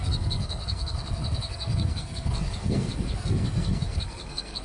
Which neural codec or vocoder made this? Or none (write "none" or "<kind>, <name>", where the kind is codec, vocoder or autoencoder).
codec, SNAC